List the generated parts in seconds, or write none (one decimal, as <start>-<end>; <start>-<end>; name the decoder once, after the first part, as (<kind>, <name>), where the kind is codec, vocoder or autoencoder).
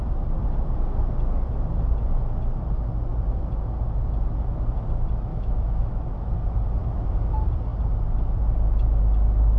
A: 5.3-5.9 (autoencoder, DAC-VAE); 6.8-7.3